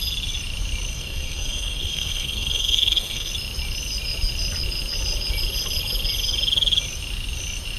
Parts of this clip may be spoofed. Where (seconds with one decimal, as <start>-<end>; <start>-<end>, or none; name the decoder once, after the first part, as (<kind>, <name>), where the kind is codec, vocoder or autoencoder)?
0.9-3.3 (codec, SNAC)